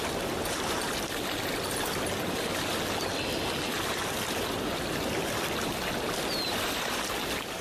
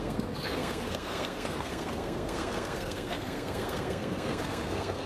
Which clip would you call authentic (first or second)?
first